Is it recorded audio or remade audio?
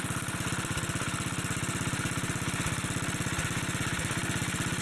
recorded